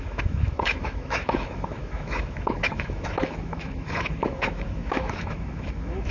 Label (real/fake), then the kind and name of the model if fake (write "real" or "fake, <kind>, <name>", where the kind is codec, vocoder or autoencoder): fake, autoencoder, DAC-VAE